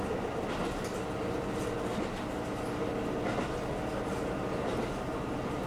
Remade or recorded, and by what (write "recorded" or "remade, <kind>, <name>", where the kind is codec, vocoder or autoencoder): recorded